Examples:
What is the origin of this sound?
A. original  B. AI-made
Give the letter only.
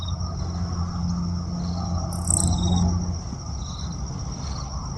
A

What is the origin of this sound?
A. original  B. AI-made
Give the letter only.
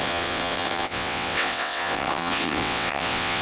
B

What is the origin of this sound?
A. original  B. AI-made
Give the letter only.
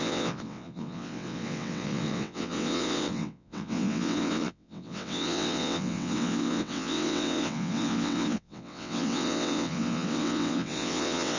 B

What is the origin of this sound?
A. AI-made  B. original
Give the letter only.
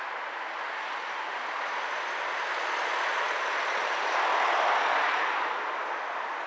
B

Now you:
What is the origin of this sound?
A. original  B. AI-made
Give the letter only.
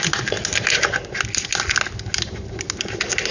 A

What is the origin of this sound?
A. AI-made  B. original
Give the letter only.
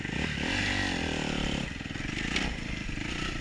B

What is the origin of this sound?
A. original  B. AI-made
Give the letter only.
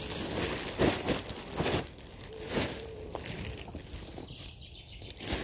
A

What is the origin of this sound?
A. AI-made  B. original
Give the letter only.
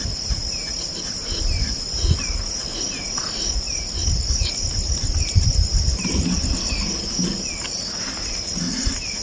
B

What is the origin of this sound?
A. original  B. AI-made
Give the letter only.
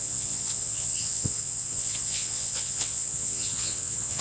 B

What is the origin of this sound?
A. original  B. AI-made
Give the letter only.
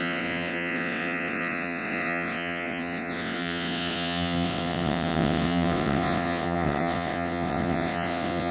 B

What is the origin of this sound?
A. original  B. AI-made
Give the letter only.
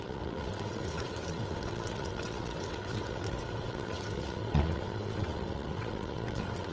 B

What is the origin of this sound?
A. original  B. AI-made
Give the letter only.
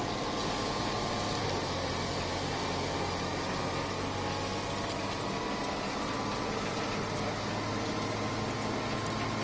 A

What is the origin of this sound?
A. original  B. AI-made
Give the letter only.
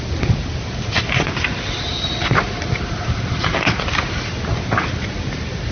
A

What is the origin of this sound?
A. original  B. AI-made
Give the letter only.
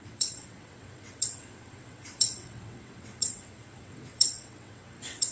B